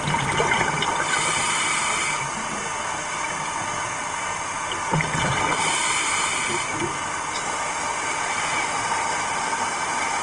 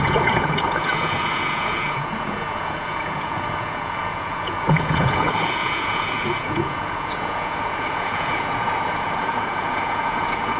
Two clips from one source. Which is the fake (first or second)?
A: second